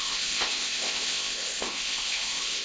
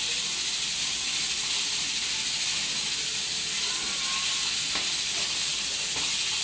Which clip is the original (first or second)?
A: second